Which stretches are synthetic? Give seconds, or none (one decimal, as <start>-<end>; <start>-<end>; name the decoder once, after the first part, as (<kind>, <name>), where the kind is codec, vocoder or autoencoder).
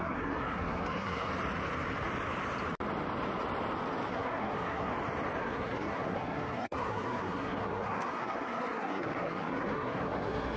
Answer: 0.0-1.3 (codec, SNAC); 4.1-4.9; 5.4-10.6